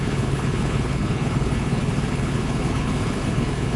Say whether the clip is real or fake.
fake